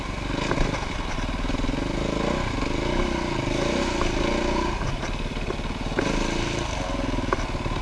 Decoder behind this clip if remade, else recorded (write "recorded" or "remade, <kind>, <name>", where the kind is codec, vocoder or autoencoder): recorded